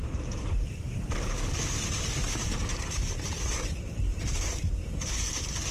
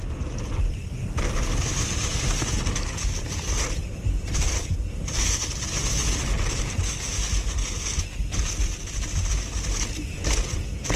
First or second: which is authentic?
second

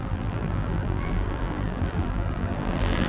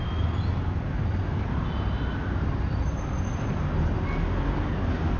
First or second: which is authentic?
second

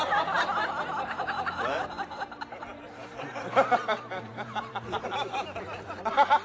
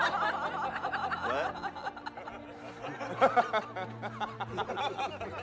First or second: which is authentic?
second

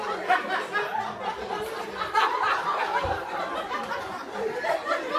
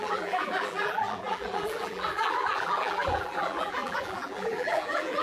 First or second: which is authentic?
first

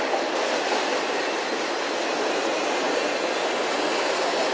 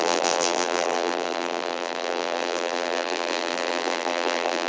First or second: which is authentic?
first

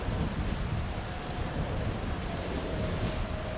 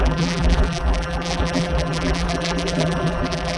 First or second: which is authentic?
first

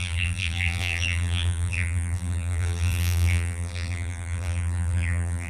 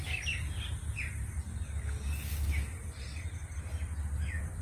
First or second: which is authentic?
second